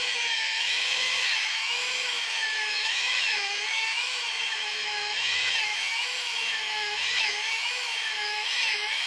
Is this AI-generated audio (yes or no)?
yes